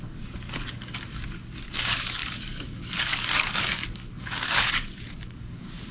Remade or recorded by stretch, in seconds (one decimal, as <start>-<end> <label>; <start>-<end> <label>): 0.0-5.9 remade